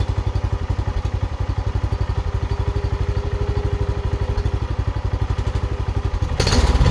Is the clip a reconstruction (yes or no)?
no